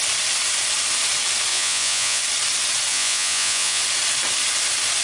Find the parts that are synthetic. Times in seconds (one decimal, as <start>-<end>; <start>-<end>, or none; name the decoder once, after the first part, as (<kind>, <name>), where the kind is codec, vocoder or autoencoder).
1.5-2.2 (vocoder, Vocos); 2.9-3.8